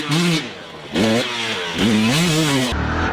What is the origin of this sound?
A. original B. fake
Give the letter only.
A